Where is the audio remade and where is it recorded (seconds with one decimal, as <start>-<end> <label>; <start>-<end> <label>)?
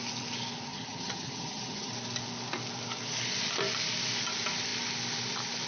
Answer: 0.0-0.7 recorded; 0.7-1.9 remade; 1.9-5.7 recorded